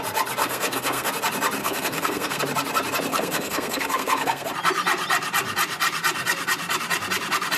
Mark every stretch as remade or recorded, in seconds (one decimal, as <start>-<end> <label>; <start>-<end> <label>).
0.0-0.4 recorded; 0.4-1.1 remade; 1.1-1.6 recorded; 1.6-2.4 remade; 2.4-3.1 recorded; 3.1-4.5 remade; 4.5-7.6 recorded